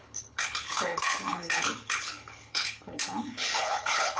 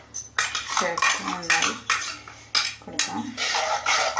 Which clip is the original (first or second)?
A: second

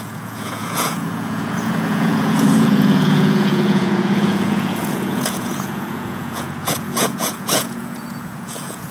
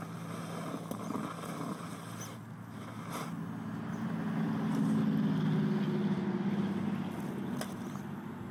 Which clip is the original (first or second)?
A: second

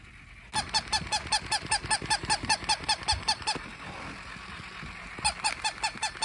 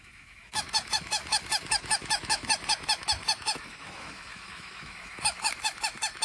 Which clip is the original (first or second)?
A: first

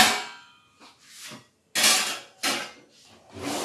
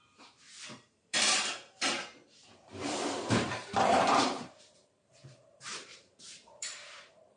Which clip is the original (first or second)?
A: first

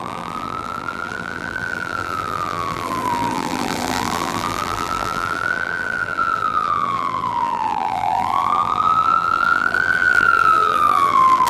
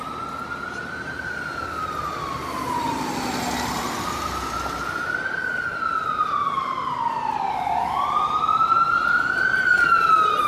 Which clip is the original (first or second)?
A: second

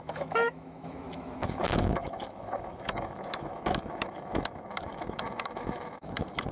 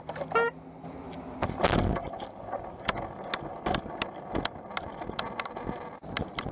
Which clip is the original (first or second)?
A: second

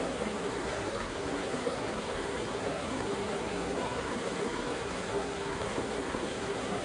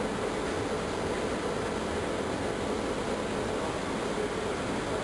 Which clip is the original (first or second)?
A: second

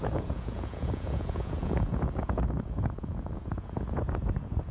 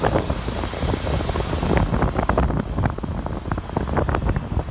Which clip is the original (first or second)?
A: second